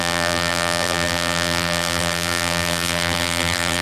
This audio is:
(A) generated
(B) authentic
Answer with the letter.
A